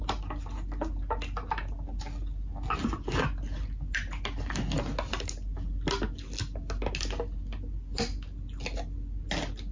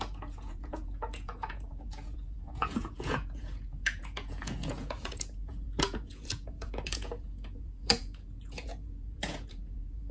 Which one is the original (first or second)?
first